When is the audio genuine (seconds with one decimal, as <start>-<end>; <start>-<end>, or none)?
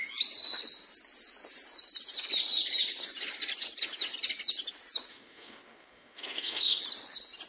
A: 0.0-5.1; 6.8-7.5